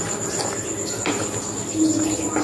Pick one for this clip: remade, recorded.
recorded